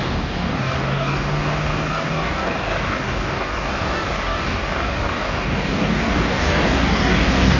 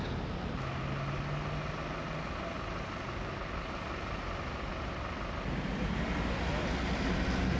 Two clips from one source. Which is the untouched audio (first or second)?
second